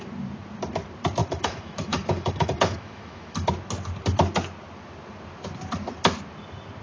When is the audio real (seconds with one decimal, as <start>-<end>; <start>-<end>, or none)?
0.0-1.2; 3.5-6.8